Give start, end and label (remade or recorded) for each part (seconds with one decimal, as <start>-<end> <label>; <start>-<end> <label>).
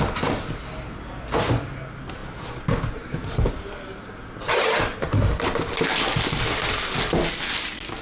0.0-8.0 recorded